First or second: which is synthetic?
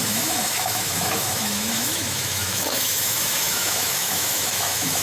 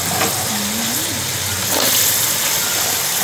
first